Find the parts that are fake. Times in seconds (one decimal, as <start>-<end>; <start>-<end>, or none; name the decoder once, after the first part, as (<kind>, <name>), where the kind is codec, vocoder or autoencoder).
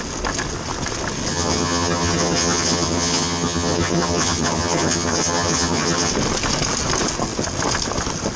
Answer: 1.3-6.1 (vocoder, HiFi-GAN)